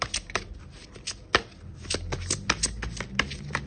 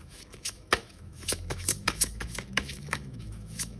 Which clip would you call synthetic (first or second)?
second